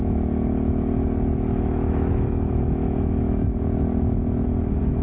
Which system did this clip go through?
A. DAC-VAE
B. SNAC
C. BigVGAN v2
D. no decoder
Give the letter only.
A